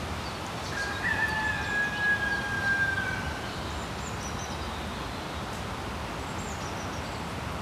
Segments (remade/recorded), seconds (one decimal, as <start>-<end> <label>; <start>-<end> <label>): 0.0-7.6 recorded